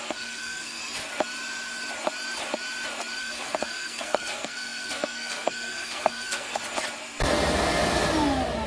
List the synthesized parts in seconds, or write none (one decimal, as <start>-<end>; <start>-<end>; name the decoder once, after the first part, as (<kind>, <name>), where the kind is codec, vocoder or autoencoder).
0.0-0.8 (codec, SNAC); 3.2-6.6